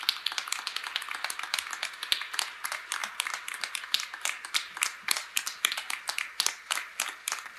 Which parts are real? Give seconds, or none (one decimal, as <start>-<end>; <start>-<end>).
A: 0.0-7.6